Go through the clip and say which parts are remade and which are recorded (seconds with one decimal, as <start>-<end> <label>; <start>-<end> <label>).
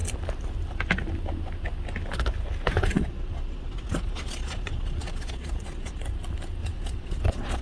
0.0-2.7 recorded; 2.7-6.0 remade; 6.0-6.6 recorded; 6.6-7.6 remade